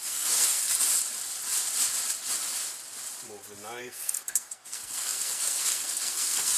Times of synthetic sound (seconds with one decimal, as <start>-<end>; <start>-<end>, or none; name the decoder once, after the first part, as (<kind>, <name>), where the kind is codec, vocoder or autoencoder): 0.0-0.6 (codec, SNAC); 3.8-6.6